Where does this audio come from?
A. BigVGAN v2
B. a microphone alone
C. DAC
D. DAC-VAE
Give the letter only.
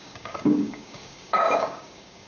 C